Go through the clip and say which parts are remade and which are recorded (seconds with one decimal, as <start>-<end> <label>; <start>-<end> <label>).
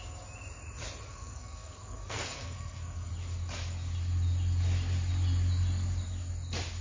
0.0-1.1 recorded; 1.1-3.1 remade; 3.1-6.8 recorded